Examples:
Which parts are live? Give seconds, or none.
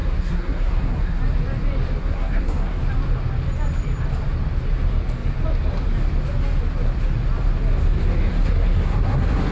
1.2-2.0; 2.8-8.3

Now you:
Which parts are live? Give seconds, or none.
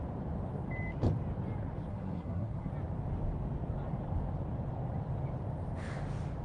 0.0-1.9; 2.7-6.4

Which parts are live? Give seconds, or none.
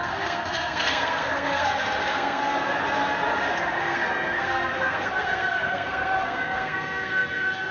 2.4-3.8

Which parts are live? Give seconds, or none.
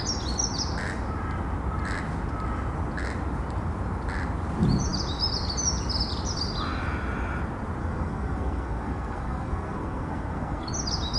0.0-7.8; 10.7-11.2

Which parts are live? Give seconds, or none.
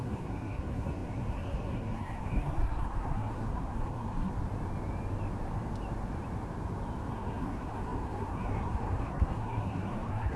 4.3-7.1